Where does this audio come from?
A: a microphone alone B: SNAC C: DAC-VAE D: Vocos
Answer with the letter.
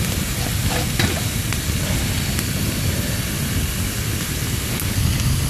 A